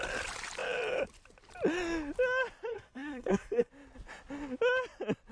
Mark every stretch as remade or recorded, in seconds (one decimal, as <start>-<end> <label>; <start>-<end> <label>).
0.0-2.7 recorded; 2.7-3.7 remade; 3.7-5.3 recorded